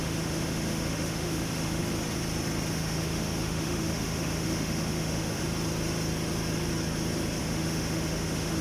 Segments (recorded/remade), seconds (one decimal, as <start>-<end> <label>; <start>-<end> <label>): 0.0-1.8 remade; 1.8-2.7 recorded; 2.7-5.4 remade; 5.4-7.4 recorded; 7.4-8.6 remade